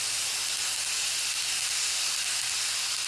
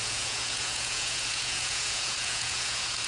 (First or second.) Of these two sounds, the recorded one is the first